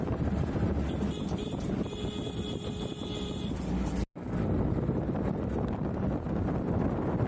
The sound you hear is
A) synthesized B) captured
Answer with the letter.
B